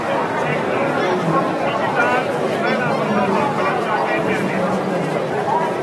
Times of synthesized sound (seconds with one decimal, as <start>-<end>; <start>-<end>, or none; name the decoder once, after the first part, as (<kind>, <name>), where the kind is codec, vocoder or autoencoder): 4.1-5.0 (vocoder, BigVGAN v2)